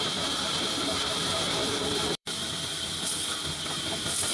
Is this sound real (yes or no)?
no